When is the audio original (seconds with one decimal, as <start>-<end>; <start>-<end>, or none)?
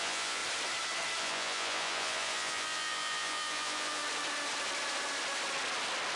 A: 0.4-1.2; 4.0-6.2